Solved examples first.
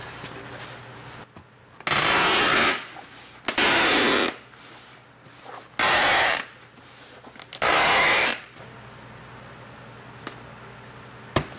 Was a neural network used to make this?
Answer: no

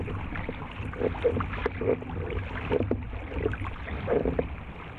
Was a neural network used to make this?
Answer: no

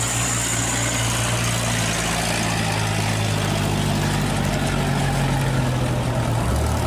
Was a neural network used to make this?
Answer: no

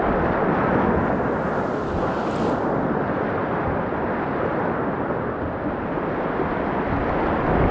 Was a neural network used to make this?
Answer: no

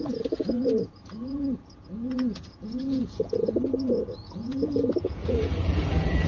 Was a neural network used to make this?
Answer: yes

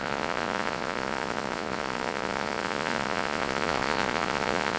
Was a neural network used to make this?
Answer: yes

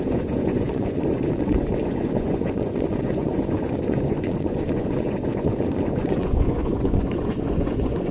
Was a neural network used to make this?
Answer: yes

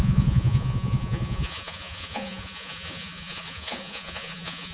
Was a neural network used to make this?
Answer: yes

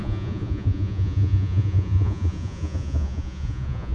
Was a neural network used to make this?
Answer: yes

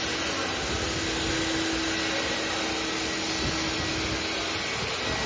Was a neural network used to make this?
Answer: no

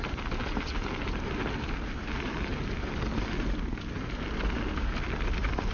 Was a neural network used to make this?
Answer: no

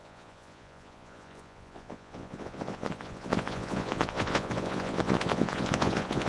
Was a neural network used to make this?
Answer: yes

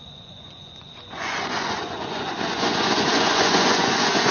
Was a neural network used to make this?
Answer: yes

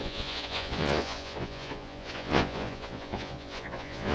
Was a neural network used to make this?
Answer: yes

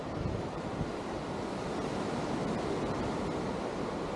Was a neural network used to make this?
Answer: no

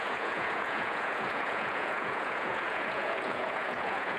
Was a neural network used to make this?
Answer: yes